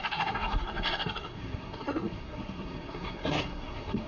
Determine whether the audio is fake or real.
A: fake